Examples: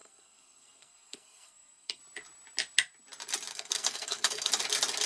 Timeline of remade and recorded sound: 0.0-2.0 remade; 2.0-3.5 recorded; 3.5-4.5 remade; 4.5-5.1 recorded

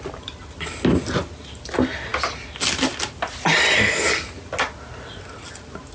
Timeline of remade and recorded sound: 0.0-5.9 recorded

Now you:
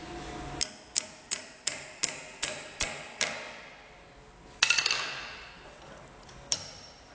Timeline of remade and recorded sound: 0.0-7.1 recorded